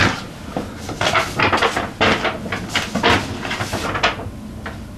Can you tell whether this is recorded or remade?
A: recorded